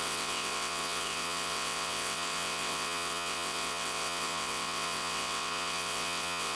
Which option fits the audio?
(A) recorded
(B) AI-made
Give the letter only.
B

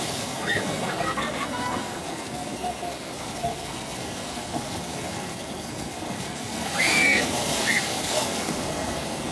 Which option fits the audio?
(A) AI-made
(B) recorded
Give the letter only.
A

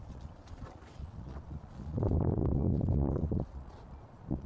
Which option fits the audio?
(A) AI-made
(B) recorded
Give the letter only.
A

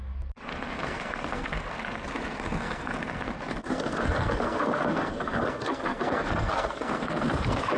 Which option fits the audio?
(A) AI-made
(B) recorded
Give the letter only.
A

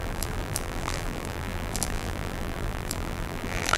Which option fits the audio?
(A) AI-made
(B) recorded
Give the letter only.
A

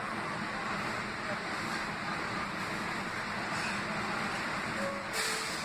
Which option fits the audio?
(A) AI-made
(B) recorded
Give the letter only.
A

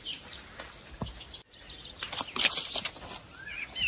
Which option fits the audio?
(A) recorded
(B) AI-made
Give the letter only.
A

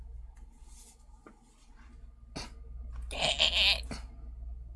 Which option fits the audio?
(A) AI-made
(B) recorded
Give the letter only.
B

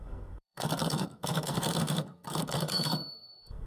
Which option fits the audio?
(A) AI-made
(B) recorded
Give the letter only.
A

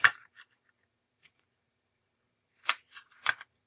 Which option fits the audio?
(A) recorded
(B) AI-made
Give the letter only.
B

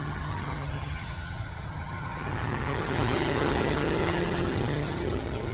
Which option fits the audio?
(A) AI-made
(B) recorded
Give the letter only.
A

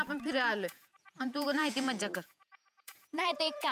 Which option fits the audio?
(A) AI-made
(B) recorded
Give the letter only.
A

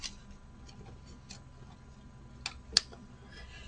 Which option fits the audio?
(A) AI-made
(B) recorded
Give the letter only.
B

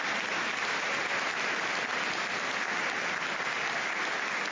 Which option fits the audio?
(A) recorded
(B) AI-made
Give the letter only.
A